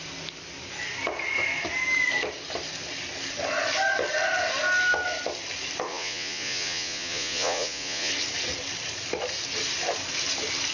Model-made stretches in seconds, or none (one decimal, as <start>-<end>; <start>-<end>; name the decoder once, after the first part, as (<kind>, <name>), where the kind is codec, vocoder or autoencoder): 5.9-8.1 (vocoder, Vocos)